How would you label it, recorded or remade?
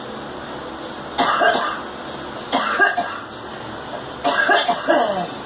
recorded